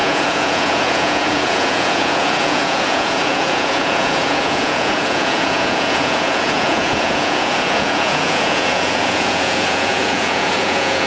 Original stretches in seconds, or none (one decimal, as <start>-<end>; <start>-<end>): none